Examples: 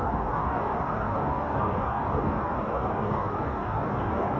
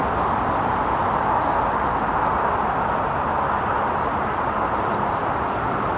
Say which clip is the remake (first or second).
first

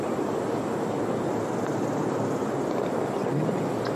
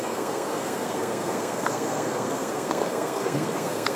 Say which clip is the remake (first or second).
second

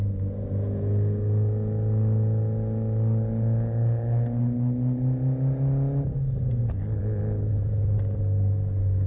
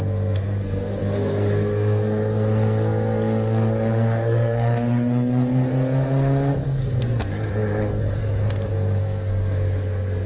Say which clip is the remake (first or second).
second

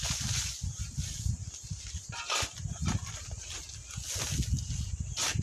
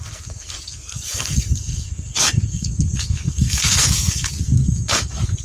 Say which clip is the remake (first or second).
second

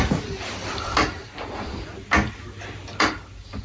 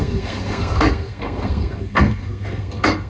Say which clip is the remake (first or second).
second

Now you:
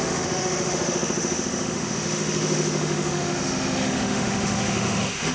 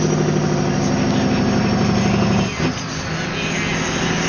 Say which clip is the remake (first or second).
first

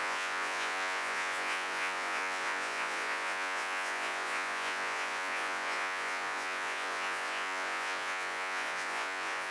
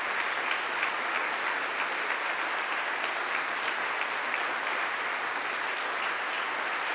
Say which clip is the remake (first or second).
first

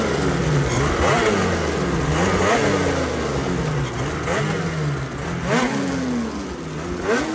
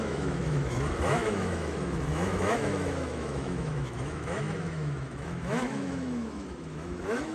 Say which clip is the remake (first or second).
second